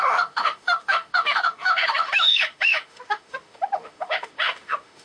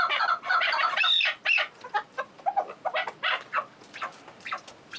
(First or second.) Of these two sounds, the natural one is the second